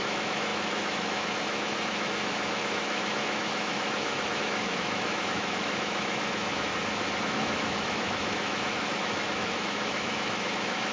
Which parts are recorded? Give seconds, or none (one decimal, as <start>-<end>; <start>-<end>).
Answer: 6.7-7.2